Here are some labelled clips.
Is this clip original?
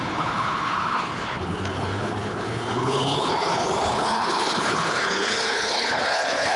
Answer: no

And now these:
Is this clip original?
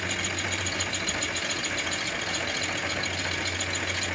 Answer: yes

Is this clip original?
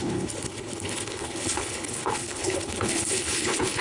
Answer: no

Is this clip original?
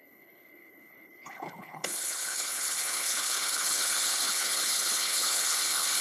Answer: no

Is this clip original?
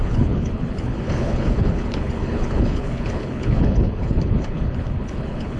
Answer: no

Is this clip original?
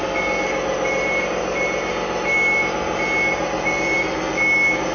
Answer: yes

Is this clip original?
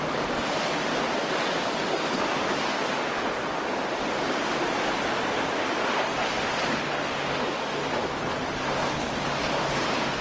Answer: yes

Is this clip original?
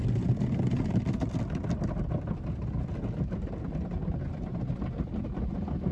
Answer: yes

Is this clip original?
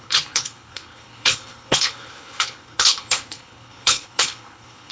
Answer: no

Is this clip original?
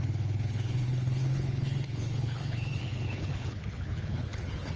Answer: no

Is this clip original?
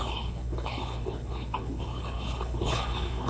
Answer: no